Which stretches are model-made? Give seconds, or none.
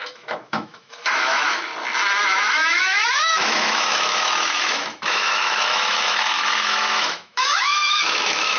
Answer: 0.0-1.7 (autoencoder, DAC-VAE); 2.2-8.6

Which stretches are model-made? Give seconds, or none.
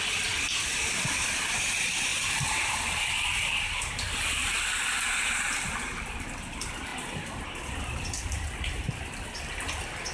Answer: none